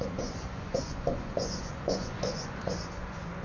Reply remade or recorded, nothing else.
remade